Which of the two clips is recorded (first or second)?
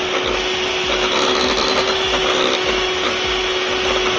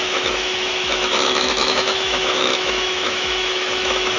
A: first